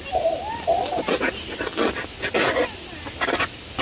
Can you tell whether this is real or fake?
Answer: real